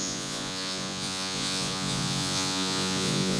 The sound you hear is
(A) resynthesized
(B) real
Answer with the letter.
A